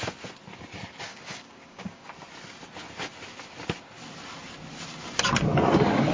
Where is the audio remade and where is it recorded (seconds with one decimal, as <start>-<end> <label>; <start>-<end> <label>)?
0.0-1.1 recorded; 1.1-2.1 remade; 2.1-6.1 recorded